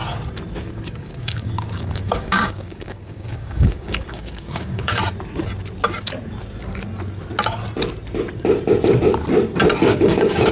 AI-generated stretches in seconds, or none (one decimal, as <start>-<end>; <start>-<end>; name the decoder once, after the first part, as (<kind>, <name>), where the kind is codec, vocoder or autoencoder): 0.6-5.0 (codec, DAC); 9.8-10.5